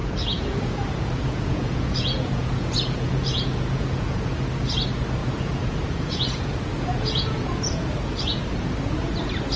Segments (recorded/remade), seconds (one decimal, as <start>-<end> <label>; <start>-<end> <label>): 0.0-4.4 remade; 4.4-5.2 recorded; 5.2-8.4 remade; 8.4-9.6 recorded

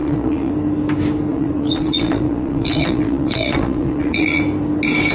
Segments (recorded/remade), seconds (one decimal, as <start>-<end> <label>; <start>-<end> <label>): 0.0-0.5 remade; 0.5-1.3 recorded; 1.3-4.4 remade; 4.4-5.1 recorded

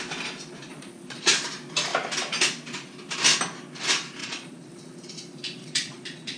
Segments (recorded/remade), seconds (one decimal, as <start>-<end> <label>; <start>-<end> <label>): 0.0-0.7 recorded; 0.7-1.3 remade; 1.3-4.2 recorded; 4.2-5.1 remade; 5.1-5.6 recorded; 5.6-6.4 remade

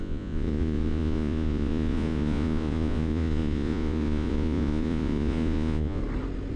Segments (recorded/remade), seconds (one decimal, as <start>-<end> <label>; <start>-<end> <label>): 0.0-6.0 remade; 6.0-6.6 recorded

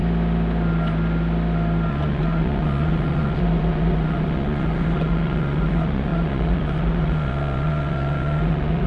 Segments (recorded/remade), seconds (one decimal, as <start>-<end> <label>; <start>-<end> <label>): 0.0-1.9 recorded; 1.9-8.9 remade

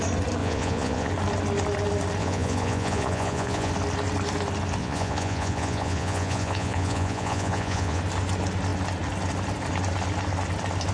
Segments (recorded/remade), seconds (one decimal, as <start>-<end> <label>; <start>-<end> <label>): 0.0-0.4 recorded; 0.4-1.1 remade; 1.1-2.2 recorded; 2.2-3.7 remade; 3.7-4.8 recorded; 4.8-8.0 remade; 8.0-10.9 recorded

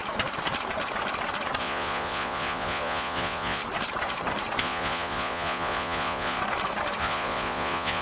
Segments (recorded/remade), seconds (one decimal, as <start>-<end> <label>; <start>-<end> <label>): 0.0-1.6 recorded; 1.6-3.6 remade; 3.6-4.6 recorded; 4.6-6.4 remade; 6.4-7.0 recorded; 7.0-8.0 remade

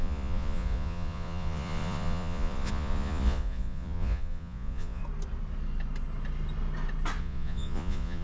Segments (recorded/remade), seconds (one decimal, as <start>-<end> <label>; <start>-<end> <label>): 0.0-5.0 remade; 5.0-7.2 recorded; 7.2-8.2 remade